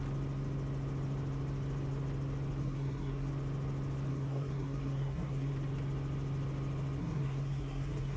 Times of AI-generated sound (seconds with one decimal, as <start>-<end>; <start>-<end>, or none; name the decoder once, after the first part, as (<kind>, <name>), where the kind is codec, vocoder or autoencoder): 2.6-3.3 (codec, SNAC); 4.1-5.5; 7.0-8.2